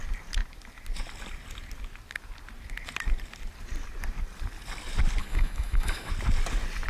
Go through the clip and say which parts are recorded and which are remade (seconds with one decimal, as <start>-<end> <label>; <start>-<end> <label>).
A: 0.0-5.2 recorded; 5.2-6.1 remade; 6.1-6.9 recorded